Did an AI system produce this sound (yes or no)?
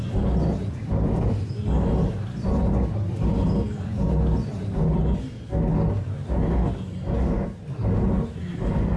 no